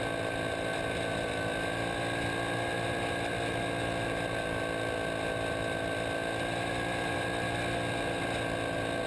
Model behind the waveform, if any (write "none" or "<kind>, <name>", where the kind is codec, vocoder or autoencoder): none